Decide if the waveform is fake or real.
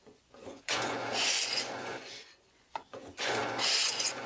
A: fake